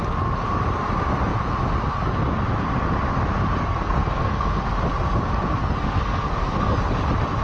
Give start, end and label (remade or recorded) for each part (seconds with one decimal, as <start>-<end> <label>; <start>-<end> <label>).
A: 0.0-3.6 recorded; 3.6-4.7 remade; 4.7-5.6 recorded; 5.6-6.8 remade; 6.8-7.4 recorded